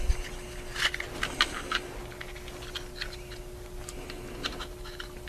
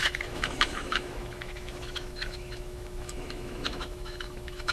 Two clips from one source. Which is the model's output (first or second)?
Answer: second